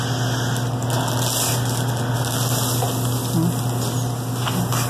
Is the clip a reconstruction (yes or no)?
no